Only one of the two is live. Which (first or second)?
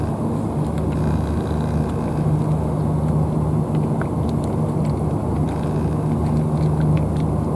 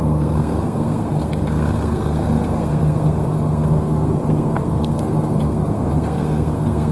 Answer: first